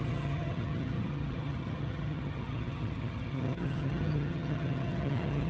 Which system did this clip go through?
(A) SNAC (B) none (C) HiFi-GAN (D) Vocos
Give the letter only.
C